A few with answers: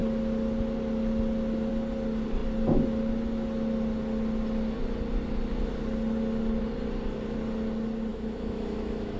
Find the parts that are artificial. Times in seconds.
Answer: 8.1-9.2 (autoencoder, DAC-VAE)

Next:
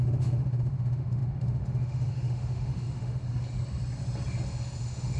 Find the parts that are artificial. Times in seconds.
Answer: 0.0-3.2 (autoencoder, DAC-VAE); 4.8-5.2